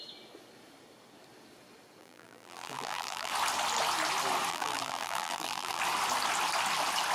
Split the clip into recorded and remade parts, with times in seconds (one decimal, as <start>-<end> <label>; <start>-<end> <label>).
0.0-2.0 recorded; 2.0-3.3 remade; 3.3-4.5 recorded; 4.5-5.8 remade; 5.8-7.1 recorded